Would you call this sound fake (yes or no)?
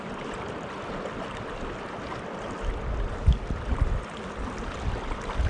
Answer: no